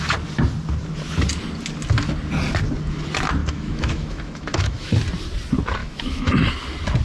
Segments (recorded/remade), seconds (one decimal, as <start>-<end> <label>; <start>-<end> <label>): 0.0-3.4 recorded; 3.4-4.9 remade; 4.9-5.8 recorded; 5.8-6.3 remade; 6.3-7.0 recorded